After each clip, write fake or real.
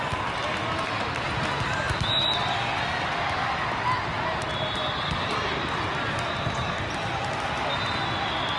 real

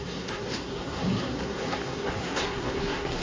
fake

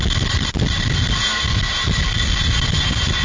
real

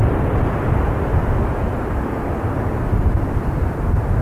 real